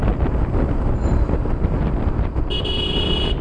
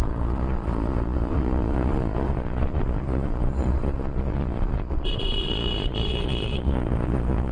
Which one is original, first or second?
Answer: first